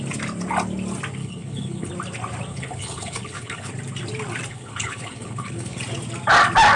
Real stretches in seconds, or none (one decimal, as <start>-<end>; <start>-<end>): 0.0-1.2; 1.9-2.5; 3.7-4.5; 5.8-6.8